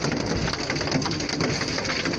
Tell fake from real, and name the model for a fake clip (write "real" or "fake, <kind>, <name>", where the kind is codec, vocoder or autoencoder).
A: real